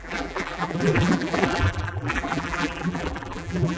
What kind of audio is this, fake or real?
fake